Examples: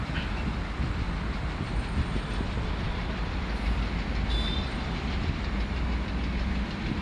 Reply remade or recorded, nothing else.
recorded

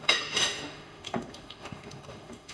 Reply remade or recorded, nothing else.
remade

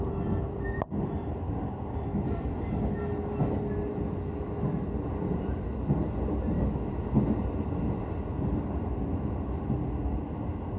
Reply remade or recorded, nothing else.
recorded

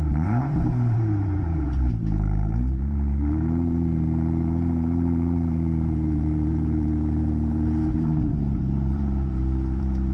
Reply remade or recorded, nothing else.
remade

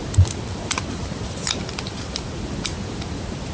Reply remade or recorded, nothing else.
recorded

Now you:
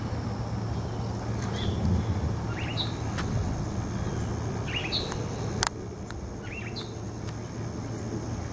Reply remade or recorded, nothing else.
recorded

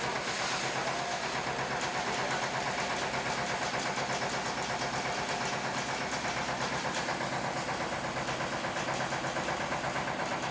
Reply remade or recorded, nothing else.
recorded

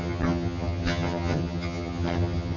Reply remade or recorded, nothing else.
remade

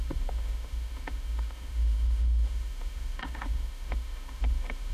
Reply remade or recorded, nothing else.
remade